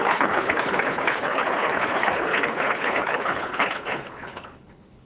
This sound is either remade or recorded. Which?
remade